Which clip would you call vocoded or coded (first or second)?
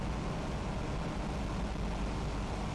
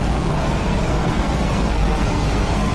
second